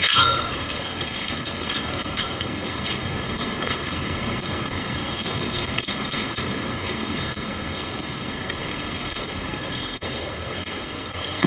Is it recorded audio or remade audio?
remade